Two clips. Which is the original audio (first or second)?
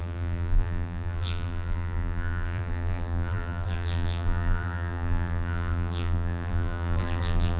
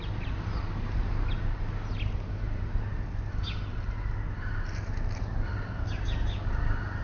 second